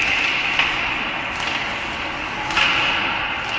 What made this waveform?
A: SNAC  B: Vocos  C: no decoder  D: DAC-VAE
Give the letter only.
C